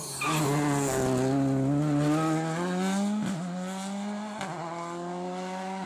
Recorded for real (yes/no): yes